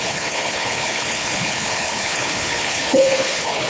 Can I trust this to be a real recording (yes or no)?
no